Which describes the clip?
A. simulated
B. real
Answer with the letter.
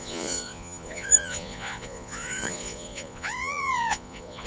A